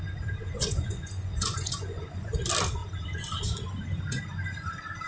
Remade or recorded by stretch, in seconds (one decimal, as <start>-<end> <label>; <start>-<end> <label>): 0.0-0.4 recorded; 0.4-2.3 remade; 2.3-5.1 recorded